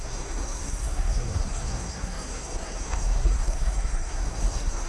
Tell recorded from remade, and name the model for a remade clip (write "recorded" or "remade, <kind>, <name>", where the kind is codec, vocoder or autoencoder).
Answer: remade, codec, SNAC